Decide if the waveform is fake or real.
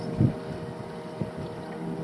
fake